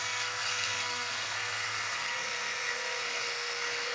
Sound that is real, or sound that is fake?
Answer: fake